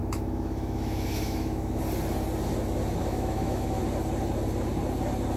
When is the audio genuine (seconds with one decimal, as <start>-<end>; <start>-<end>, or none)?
1.8-3.0; 3.8-5.4